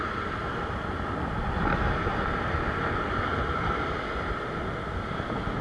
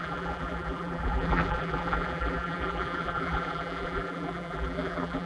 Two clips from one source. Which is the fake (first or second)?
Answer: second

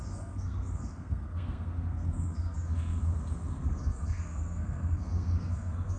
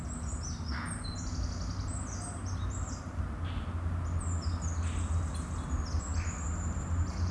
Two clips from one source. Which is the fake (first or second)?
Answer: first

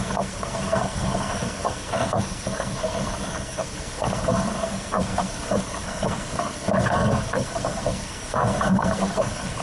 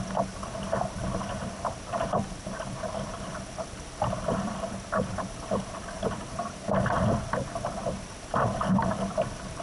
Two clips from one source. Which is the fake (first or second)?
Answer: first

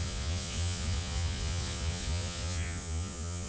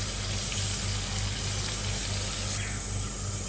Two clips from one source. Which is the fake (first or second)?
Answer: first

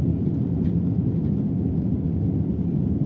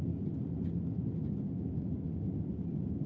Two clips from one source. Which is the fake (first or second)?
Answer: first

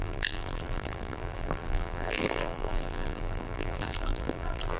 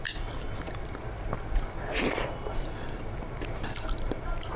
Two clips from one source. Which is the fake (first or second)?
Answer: first